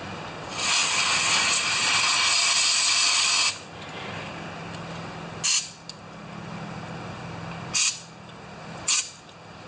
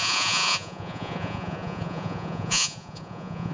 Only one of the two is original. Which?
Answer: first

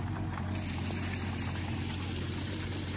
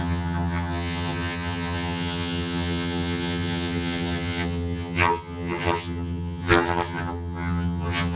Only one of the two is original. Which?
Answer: first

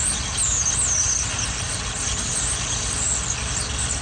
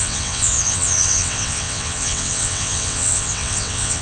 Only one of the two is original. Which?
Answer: first